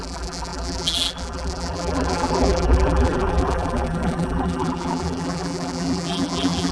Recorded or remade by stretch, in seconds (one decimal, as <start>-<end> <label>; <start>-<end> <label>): 0.0-6.7 remade